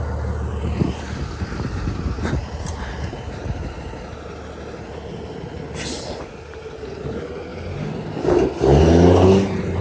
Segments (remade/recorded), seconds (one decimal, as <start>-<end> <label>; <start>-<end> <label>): 0.0-9.8 recorded